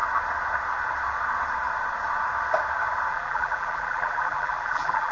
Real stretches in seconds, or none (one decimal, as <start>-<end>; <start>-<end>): 0.0-3.1